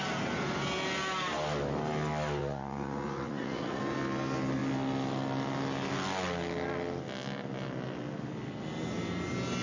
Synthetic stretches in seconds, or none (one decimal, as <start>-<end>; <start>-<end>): 2.4-3.8